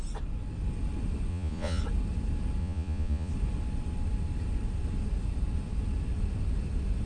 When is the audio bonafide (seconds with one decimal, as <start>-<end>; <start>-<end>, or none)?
0.0-1.3; 1.8-2.6; 3.3-7.1